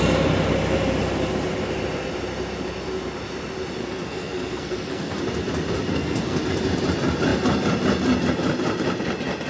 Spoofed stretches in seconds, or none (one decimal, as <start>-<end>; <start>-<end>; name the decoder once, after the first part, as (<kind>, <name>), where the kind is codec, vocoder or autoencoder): 3.8-5.2 (codec, SNAC); 5.9-6.4